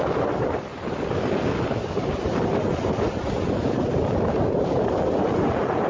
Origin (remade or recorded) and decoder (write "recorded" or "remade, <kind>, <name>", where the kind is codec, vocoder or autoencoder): recorded